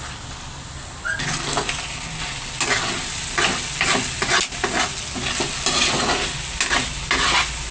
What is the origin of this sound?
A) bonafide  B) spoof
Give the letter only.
A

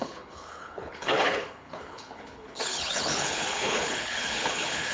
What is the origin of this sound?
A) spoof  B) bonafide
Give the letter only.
A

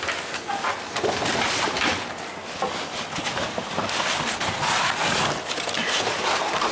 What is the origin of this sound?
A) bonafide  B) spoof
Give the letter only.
A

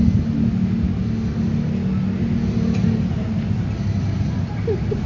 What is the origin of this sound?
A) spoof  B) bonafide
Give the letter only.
B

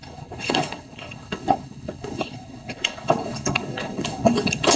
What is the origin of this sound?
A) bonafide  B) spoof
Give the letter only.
B